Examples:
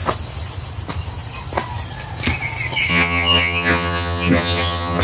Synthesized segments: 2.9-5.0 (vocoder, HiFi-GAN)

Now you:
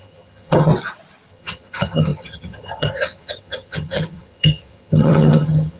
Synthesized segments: 0.0-0.7 (vocoder, HiFi-GAN); 1.3-5.8

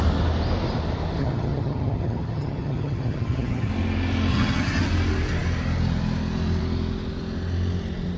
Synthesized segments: 1.2-3.7 (vocoder, HiFi-GAN); 4.3-4.9

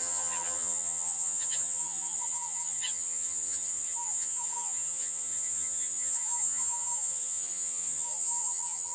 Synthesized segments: 0.0-8.9 (vocoder, HiFi-GAN)

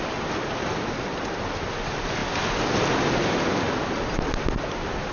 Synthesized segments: none

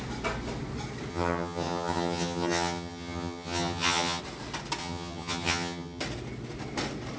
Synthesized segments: 1.1-4.2 (vocoder, HiFi-GAN); 4.8-6.0

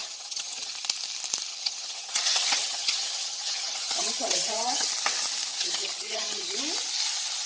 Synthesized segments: 0.0-0.7 (vocoder, HiFi-GAN); 1.5-4.9; 5.5-6.6